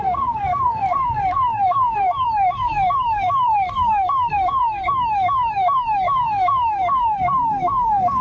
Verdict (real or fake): fake